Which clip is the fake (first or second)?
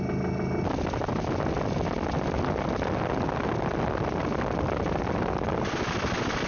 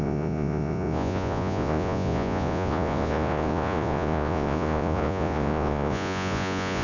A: second